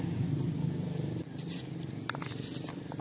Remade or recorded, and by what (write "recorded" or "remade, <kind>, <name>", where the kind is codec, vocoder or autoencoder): remade, vocoder, BigVGAN v2